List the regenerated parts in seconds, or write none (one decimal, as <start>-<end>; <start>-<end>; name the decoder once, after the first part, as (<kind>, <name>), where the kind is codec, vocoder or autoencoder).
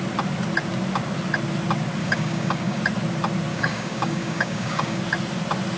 2.0-2.8 (codec, DAC); 3.5-5.0